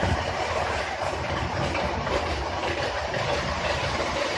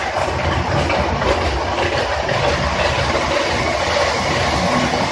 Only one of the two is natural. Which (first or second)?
second